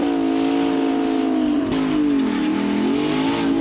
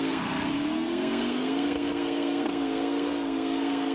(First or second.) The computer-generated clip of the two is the second